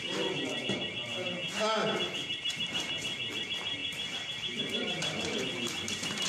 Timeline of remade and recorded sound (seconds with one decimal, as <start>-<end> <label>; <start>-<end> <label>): 0.0-3.8 recorded; 3.8-5.4 remade; 5.4-6.3 recorded